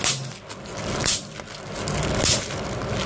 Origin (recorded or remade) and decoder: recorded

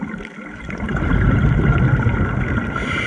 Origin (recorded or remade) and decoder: recorded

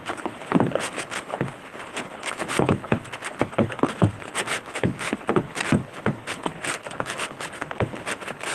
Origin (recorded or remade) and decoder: remade, codec, HILCodec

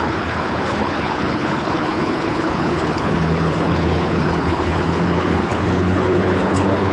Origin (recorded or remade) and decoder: remade, codec, HILCodec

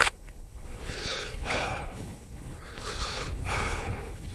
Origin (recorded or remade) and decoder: remade, codec, HILCodec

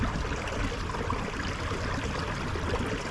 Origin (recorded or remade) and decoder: recorded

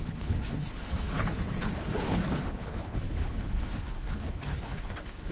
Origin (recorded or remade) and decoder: remade, codec, HILCodec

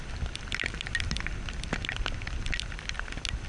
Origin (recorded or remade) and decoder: recorded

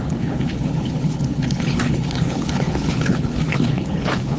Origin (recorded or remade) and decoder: remade, codec, HILCodec